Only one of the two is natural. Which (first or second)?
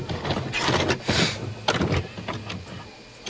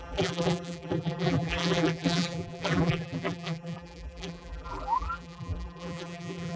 first